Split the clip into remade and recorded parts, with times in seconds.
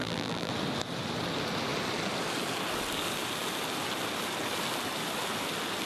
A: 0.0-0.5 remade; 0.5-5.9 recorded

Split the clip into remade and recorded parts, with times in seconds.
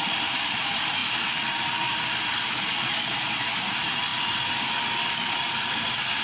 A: 0.0-6.2 recorded